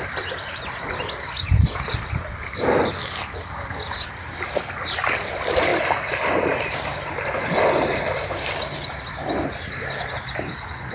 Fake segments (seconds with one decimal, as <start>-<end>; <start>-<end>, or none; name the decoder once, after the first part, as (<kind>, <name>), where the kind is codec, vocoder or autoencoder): none